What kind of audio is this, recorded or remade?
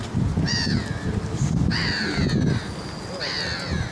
recorded